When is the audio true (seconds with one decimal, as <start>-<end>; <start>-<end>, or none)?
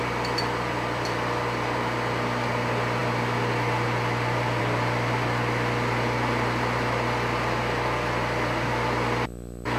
0.0-9.8